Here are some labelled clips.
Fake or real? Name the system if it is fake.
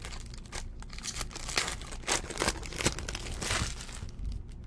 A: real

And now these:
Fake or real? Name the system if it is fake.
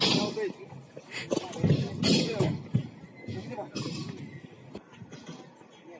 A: real